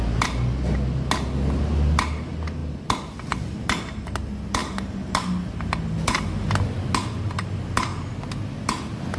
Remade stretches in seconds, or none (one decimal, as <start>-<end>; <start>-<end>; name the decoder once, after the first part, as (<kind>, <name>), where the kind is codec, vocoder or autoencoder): none